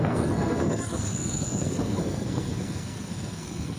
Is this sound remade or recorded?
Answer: remade